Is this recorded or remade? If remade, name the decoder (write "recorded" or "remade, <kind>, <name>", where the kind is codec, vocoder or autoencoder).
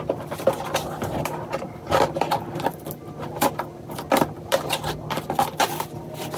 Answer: recorded